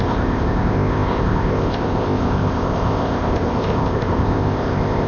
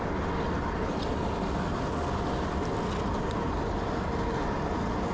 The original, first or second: second